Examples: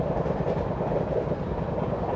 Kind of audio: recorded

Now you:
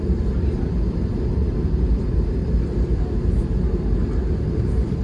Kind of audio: remade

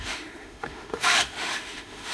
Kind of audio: remade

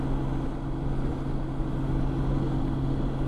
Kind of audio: recorded